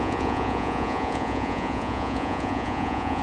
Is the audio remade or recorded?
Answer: remade